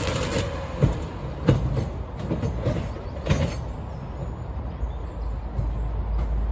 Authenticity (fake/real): real